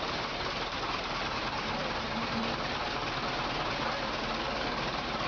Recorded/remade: remade